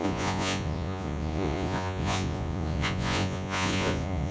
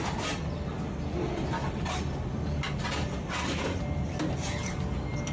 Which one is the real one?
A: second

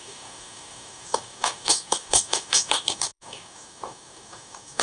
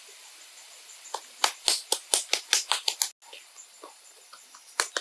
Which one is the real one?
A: second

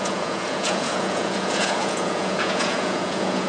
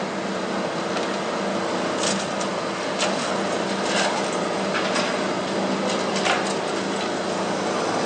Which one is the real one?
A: second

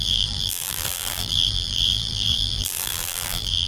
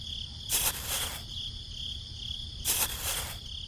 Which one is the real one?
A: second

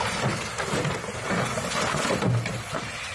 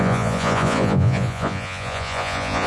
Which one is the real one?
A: first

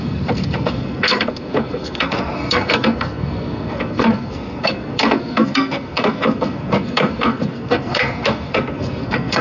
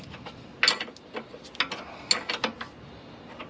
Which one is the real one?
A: second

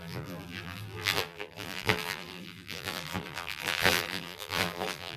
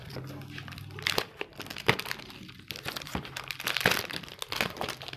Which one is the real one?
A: second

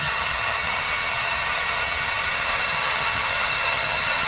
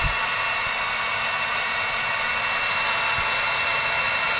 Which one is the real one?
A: second